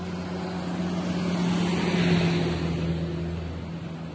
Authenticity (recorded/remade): recorded